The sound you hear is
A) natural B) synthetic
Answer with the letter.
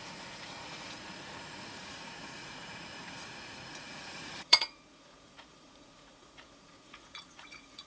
B